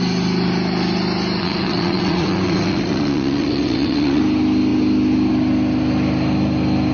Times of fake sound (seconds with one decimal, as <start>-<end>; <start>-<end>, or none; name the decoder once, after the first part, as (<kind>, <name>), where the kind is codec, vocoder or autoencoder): 1.4-4.2 (vocoder, WaveNeXt)